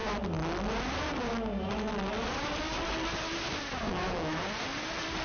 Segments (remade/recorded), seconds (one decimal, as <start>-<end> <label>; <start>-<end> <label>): 0.0-3.9 recorded; 3.9-4.4 remade; 4.4-5.2 recorded